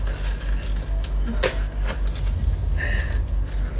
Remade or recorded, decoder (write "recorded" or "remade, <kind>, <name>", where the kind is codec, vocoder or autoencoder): recorded